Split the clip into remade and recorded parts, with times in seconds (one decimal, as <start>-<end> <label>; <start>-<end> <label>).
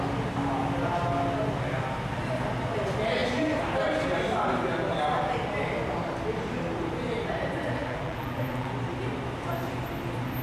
0.0-7.8 recorded; 7.8-8.7 remade; 8.7-10.4 recorded